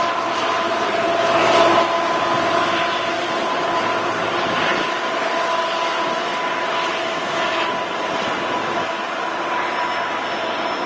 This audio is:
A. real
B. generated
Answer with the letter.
A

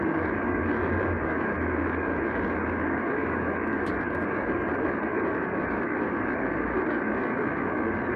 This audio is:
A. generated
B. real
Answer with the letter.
A